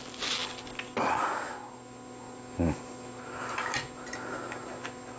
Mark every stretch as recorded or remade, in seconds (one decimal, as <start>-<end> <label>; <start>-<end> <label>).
0.0-5.2 recorded